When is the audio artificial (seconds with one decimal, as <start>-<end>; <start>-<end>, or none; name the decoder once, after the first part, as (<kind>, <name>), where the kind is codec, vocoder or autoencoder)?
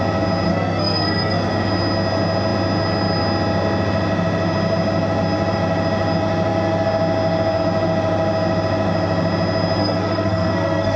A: 0.5-1.5 (codec, SNAC); 9.8-11.0